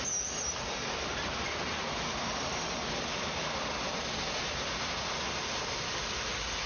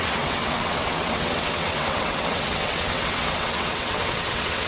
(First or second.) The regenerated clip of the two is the second